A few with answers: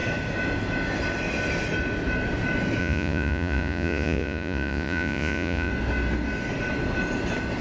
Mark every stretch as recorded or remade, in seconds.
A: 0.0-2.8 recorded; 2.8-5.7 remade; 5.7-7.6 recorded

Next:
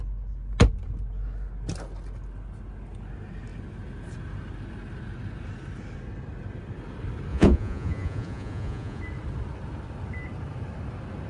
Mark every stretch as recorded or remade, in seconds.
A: 0.0-7.3 recorded; 7.3-9.0 remade; 9.0-11.3 recorded

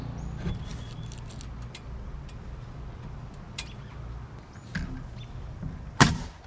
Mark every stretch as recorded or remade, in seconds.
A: 0.0-6.5 recorded

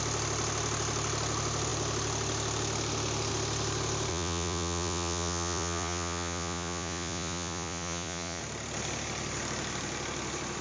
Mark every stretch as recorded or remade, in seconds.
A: 0.0-4.1 recorded; 4.1-8.4 remade; 8.4-10.6 recorded

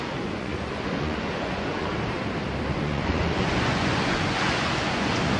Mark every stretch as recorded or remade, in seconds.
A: 0.0-1.9 remade; 1.9-2.7 recorded; 2.7-5.4 remade

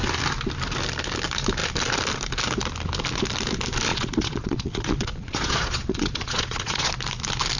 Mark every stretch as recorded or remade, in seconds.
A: 0.0-3.9 recorded; 3.9-6.9 remade; 6.9-7.6 recorded

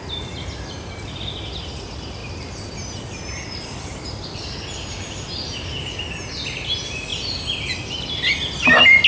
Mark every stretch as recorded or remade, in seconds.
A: 0.0-9.1 recorded